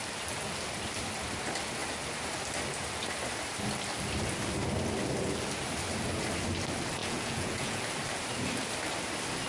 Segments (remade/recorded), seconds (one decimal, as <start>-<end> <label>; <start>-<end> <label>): 0.0-7.0 recorded; 7.0-7.8 remade; 7.8-9.5 recorded